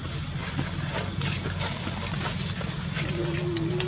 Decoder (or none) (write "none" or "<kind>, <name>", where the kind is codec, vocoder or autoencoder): none